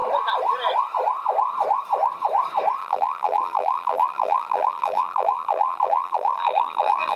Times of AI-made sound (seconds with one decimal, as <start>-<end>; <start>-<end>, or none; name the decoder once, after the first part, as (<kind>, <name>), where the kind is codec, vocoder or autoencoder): 2.8-7.2 (vocoder, BigVGAN v2)